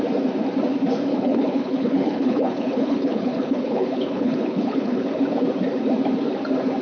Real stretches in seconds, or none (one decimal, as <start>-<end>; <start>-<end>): 0.0-1.1; 5.2-6.8